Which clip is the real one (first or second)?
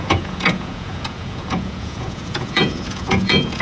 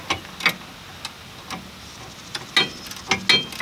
second